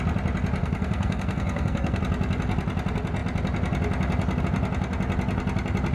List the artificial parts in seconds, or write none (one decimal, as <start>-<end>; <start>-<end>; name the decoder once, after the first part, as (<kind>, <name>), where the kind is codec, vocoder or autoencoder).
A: 0.6-2.0 (codec, SNAC)